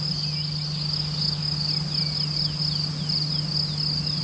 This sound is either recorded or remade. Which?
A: recorded